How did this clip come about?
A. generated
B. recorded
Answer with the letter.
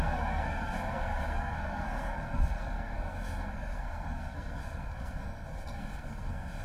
A